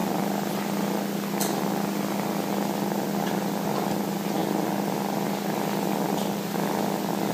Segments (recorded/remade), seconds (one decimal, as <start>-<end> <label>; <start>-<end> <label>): 0.0-7.3 recorded